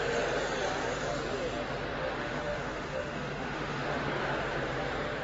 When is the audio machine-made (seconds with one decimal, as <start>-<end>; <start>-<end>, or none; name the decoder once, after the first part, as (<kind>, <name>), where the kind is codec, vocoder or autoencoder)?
2.0-4.1 (autoencoder, DAC-VAE)